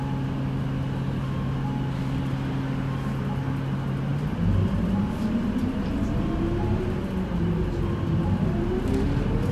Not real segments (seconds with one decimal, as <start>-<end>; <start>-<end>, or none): none